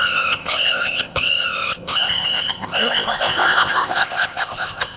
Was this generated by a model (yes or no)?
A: yes